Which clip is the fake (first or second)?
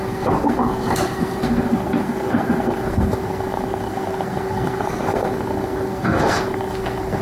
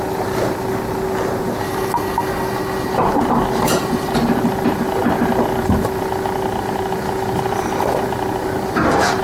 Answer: first